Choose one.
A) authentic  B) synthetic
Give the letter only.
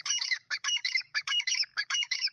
B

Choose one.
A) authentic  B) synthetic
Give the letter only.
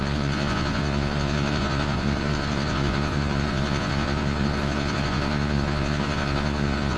B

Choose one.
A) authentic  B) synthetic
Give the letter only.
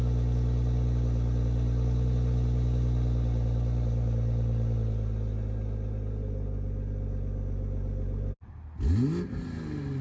A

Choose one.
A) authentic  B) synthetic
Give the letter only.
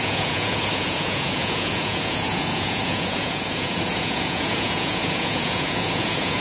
B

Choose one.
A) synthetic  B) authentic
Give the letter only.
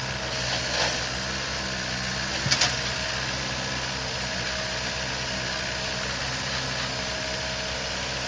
B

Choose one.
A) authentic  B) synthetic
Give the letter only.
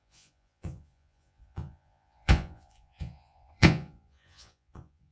B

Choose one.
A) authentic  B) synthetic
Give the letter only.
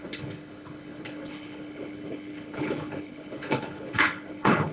B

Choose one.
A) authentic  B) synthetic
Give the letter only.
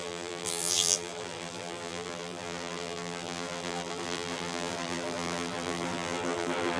B